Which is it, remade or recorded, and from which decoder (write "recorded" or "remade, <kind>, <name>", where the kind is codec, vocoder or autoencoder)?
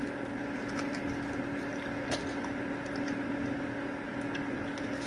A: recorded